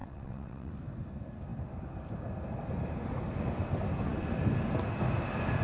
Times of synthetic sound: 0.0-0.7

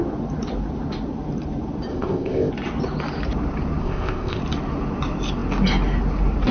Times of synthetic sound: 1.9-2.5; 3.8-4.4

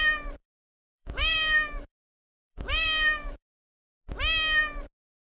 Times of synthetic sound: 0.4-3.5

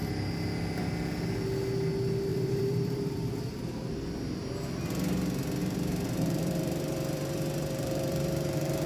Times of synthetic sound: 2.3-3.9; 5.6-8.9

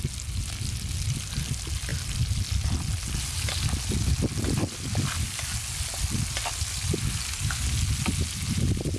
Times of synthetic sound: none

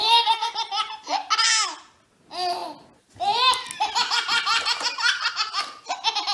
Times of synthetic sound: 0.0-0.5

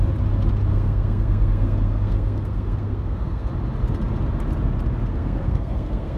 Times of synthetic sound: 0.7-3.5; 5.1-6.2